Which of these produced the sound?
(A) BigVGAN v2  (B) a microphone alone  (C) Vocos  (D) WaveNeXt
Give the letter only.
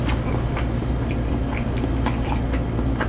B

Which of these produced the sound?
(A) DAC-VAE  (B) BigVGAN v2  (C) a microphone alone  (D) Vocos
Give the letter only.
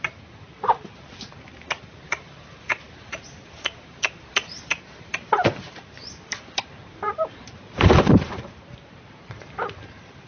B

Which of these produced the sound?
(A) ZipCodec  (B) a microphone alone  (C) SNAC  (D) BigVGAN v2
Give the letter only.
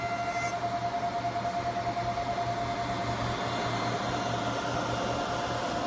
B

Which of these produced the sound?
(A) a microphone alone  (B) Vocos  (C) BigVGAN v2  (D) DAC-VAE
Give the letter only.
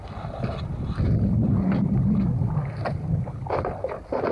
A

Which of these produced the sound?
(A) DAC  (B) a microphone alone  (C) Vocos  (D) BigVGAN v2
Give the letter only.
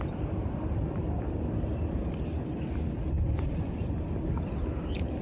B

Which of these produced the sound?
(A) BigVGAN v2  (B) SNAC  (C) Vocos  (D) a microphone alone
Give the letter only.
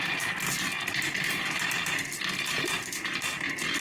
D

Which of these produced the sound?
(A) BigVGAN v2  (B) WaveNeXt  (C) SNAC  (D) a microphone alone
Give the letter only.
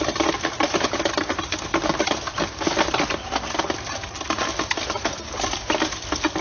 A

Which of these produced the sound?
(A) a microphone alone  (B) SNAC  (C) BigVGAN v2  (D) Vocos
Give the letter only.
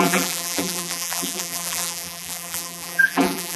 C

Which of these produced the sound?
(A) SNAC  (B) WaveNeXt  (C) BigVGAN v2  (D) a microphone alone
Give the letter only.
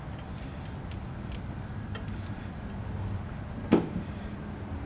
C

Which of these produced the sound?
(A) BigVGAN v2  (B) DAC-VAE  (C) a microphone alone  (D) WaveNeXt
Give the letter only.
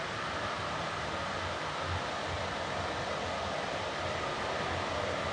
A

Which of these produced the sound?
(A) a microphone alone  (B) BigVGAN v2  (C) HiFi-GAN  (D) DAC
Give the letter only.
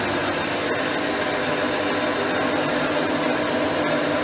A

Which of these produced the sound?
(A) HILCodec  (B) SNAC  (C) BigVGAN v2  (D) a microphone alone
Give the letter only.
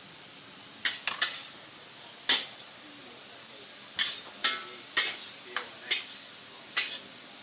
D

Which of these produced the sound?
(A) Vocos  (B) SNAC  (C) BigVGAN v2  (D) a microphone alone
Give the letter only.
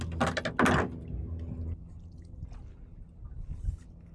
D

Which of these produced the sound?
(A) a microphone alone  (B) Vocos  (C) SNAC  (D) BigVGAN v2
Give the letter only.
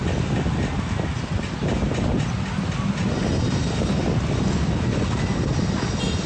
A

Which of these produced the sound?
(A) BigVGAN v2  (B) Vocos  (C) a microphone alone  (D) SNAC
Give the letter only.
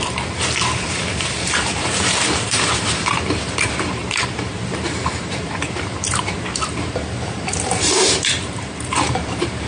A